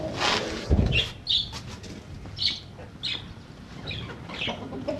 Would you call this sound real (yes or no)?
yes